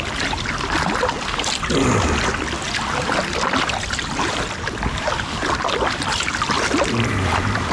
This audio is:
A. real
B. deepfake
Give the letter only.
A